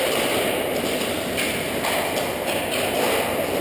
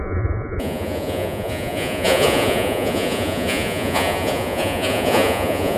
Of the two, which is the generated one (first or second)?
second